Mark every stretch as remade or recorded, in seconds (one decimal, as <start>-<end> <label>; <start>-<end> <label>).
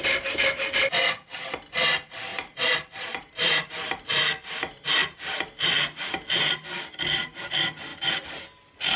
0.0-2.3 recorded; 2.3-3.7 remade; 3.7-7.9 recorded; 7.9-8.4 remade; 8.4-9.0 recorded